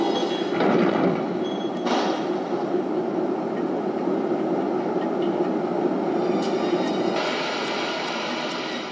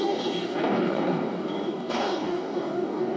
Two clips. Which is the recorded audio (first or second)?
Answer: first